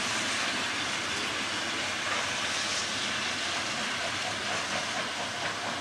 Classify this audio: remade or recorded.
recorded